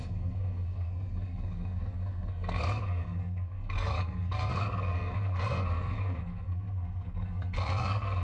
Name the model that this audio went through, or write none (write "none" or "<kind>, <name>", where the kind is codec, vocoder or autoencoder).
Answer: codec, SNAC